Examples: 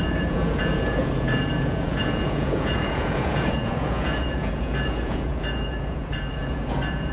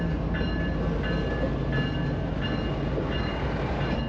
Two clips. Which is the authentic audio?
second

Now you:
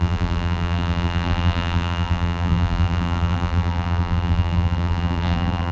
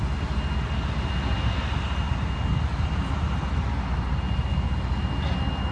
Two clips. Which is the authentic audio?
second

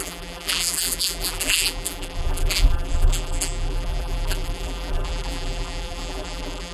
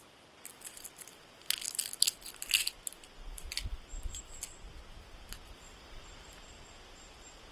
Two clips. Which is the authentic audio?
second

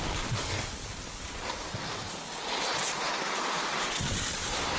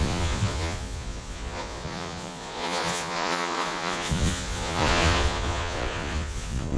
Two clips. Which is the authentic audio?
first